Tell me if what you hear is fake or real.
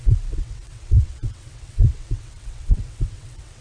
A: fake